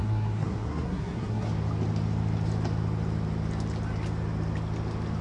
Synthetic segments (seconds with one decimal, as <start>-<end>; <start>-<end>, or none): 0.0-1.5